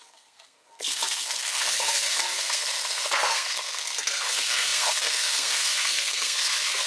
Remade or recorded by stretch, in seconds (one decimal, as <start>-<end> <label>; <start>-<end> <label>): 0.0-6.9 remade